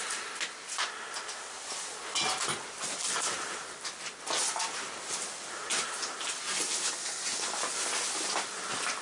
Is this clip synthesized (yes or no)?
no